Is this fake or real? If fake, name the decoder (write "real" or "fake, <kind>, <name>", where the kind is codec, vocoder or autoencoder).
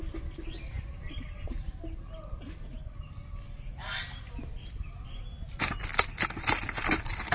real